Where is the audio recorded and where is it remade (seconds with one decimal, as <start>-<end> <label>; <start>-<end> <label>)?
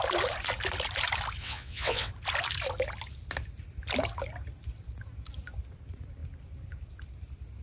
0.0-1.4 recorded; 1.4-2.1 remade; 2.1-7.6 recorded